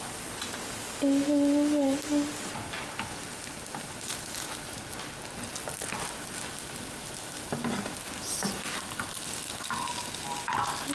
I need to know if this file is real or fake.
real